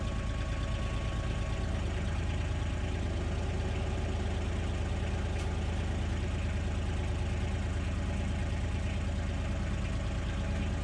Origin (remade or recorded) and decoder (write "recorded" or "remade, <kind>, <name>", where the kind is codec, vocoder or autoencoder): recorded